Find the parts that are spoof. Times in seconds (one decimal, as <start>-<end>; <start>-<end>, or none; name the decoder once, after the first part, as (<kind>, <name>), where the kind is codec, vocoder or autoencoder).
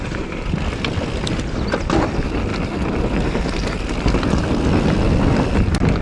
none